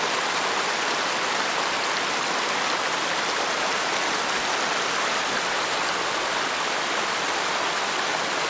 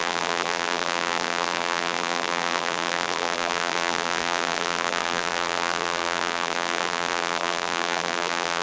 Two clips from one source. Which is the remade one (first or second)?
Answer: second